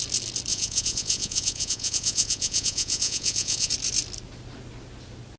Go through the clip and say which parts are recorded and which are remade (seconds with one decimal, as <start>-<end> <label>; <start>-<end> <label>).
0.0-0.5 recorded; 0.5-3.7 remade; 3.7-5.4 recorded